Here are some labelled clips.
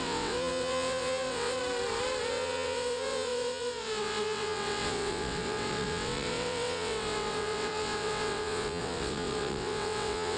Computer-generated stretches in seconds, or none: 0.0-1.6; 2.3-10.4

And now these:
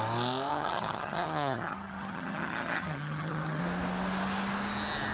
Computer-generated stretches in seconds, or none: 0.5-3.6

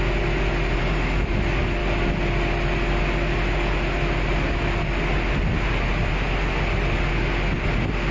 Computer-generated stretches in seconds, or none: 0.8-1.4

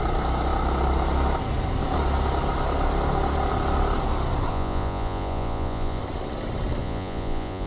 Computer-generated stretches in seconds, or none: 4.5-6.0; 6.8-7.7

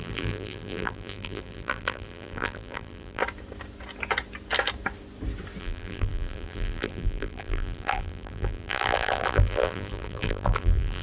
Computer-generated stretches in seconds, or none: 0.0-3.2; 5.6-11.0